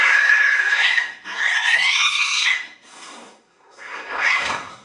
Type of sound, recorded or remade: remade